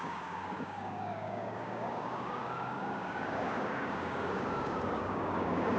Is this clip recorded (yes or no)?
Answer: no